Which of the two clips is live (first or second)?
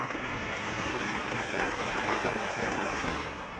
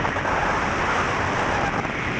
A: second